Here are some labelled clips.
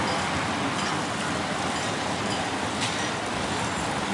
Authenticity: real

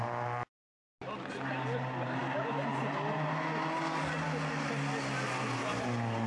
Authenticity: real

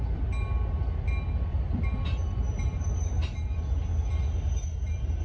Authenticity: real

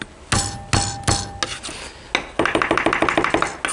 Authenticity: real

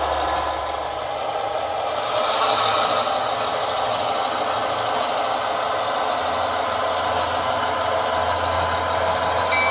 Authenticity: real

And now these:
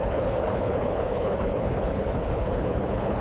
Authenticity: fake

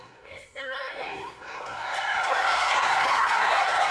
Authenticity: fake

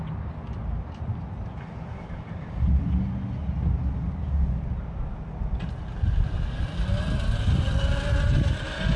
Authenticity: real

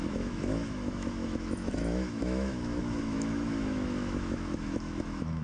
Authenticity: fake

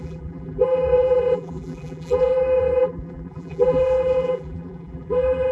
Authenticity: fake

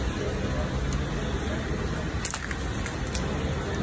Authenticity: real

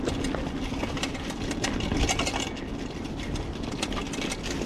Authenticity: real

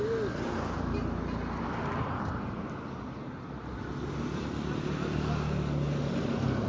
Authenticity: real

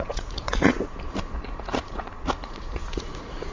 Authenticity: fake